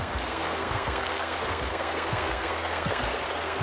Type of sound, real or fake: fake